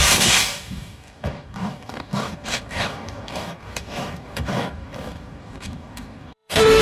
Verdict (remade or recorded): remade